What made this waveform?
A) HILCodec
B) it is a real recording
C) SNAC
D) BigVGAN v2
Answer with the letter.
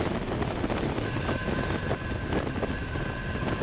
B